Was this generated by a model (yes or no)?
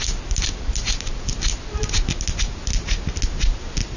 no